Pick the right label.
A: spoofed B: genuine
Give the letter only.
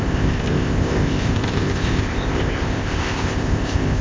A